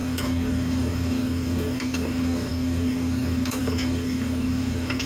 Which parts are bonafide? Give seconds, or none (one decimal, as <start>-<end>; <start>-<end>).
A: none